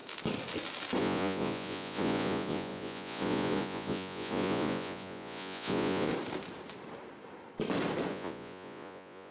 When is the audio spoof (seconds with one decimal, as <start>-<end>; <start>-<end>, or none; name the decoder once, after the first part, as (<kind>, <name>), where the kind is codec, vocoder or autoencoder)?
1.0-6.1 (vocoder, Vocos); 8.1-9.3